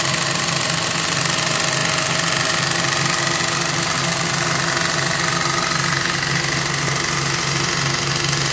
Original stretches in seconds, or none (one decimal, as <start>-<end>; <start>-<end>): 0.0-8.5